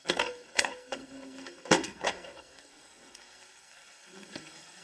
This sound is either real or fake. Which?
fake